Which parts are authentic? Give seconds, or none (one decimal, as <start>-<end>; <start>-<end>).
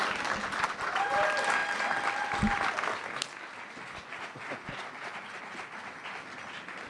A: 0.0-6.9